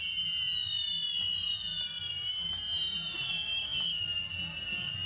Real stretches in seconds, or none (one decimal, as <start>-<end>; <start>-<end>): 0.5-5.1